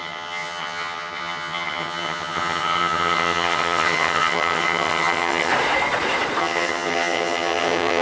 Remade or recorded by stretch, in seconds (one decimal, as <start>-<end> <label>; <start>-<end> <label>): 0.0-5.5 remade; 5.5-6.4 recorded; 6.4-8.0 remade